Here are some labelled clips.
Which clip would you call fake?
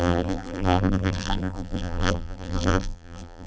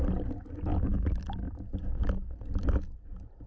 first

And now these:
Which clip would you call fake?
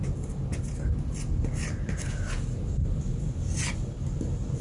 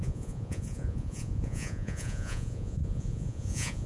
second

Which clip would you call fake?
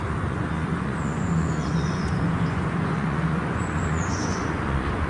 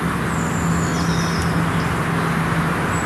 first